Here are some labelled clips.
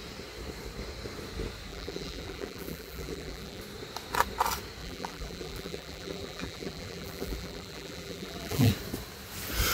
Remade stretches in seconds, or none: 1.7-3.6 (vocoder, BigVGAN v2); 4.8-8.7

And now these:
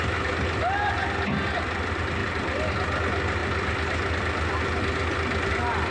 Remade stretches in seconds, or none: 2.2-2.7 (vocoder, BigVGAN v2)

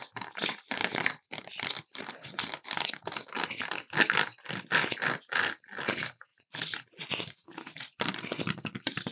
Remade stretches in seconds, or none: none

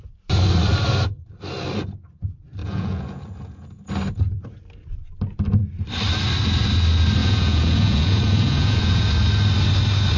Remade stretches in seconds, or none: 2.6-3.8 (vocoder, Vocos); 7.2-9.1

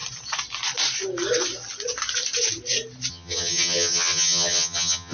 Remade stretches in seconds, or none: 3.1-5.1 (vocoder, HiFi-GAN)

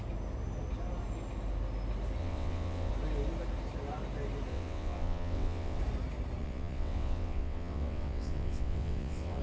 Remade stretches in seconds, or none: 2.2-2.9 (vocoder, WaveNeXt); 4.5-5.8; 6.4-9.4